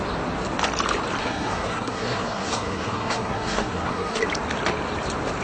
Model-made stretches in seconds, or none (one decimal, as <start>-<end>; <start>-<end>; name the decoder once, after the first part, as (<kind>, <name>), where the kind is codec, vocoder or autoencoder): 1.2-4.2 (codec, SNAC)

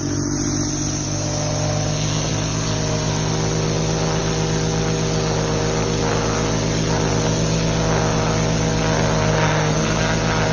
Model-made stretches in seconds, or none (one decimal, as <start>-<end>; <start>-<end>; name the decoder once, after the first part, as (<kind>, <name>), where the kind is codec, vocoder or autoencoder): 9.3-10.0 (codec, SNAC)